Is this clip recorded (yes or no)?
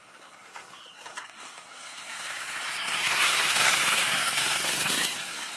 no